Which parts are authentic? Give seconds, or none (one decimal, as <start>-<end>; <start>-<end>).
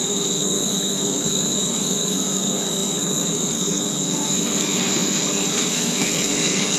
none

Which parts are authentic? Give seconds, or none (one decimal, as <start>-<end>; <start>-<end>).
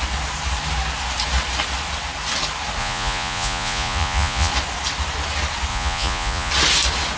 0.0-2.8; 4.5-5.7; 6.5-7.2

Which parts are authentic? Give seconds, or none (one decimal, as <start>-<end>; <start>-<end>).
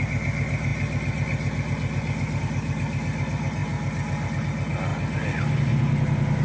0.0-6.4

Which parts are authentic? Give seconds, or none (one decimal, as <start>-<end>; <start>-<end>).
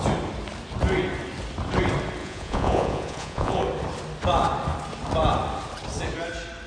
0.0-2.2; 3.6-6.7